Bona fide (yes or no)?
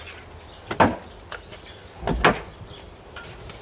yes